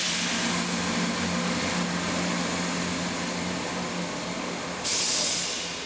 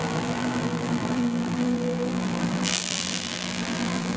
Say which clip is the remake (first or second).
second